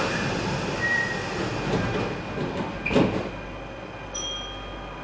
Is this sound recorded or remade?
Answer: recorded